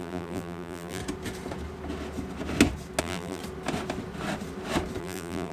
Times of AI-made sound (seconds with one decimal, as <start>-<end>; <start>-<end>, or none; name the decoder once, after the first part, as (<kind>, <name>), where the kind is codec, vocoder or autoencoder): 0.0-1.0 (vocoder, BigVGAN v2); 3.0-3.4; 5.0-5.5